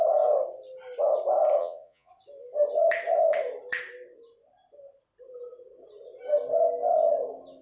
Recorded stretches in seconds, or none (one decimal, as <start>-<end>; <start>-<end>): 0.0-1.6; 2.1-7.6